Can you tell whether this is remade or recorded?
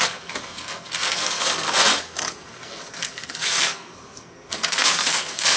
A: remade